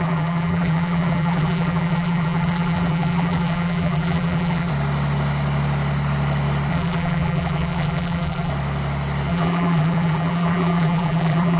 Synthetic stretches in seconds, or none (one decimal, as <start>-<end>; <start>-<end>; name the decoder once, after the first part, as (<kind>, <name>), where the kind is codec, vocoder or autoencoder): 0.0-4.7 (vocoder, BigVGAN v2); 6.7-8.5; 9.3-11.6